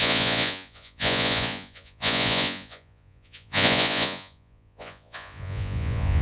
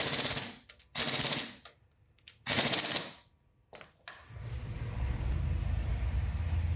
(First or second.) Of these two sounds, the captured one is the second